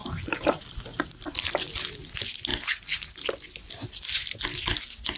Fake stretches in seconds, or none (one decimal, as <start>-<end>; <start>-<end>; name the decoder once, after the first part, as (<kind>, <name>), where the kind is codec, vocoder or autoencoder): 0.0-0.6 (vocoder, BigVGAN v2)